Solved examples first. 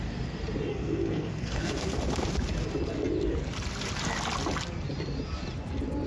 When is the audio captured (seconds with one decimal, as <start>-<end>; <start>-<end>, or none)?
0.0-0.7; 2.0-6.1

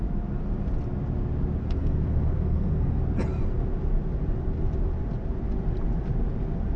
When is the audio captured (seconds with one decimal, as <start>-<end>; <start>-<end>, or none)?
0.0-1.6; 3.0-6.8

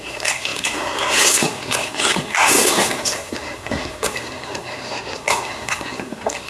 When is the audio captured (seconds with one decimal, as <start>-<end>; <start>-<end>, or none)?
none

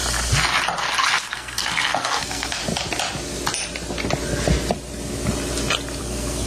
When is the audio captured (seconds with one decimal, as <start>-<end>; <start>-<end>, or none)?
0.0-1.2; 2.6-6.0

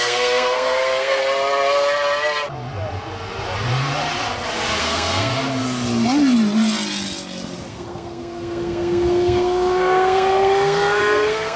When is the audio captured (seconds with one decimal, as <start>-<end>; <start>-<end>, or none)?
1.2-4.8; 5.3-7.7